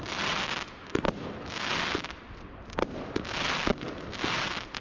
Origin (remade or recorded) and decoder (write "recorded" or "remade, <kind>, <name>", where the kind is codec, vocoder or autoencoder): recorded